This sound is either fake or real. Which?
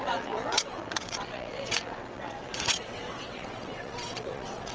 fake